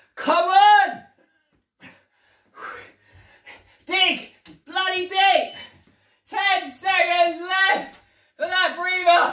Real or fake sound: real